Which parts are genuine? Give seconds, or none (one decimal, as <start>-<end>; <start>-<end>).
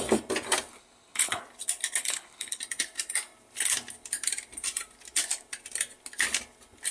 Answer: 0.0-0.7; 1.4-2.0; 2.6-6.9